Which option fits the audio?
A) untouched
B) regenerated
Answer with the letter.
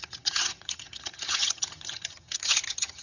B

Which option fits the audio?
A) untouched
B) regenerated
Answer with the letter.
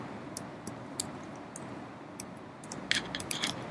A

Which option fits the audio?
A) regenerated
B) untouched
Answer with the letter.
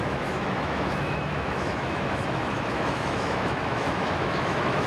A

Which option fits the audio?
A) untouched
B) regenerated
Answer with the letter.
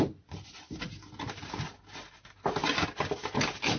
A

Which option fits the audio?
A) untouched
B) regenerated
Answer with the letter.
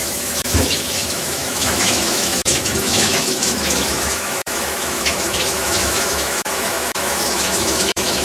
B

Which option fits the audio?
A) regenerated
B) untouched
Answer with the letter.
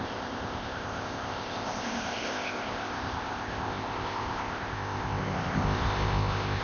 A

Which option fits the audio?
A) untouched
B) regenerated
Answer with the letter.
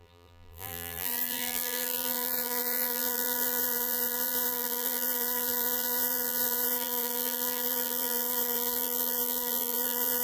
B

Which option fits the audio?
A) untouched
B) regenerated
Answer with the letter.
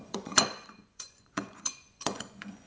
B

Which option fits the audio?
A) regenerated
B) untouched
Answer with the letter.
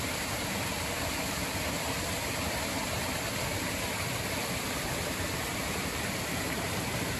B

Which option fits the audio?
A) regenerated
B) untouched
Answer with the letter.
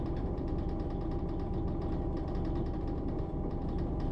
A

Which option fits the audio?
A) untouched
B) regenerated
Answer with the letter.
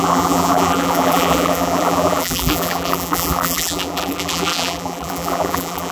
B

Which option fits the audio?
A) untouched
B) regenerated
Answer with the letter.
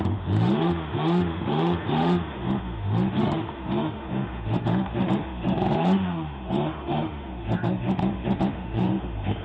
B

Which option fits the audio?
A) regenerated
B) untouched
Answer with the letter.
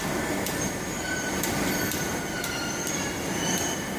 A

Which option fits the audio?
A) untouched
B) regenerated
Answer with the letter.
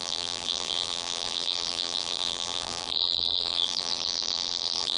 B